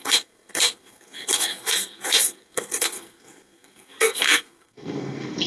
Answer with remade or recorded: remade